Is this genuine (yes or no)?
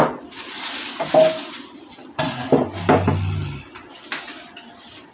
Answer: yes